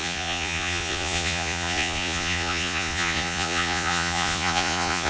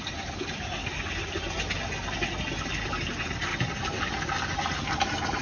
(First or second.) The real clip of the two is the second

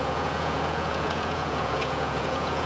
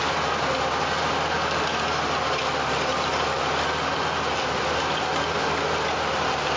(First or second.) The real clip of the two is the second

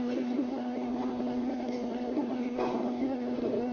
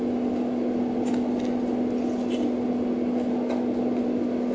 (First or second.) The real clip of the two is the second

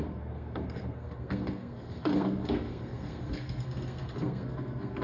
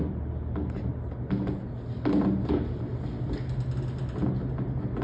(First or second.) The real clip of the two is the second